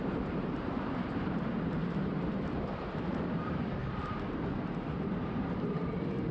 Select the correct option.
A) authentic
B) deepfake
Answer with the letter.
B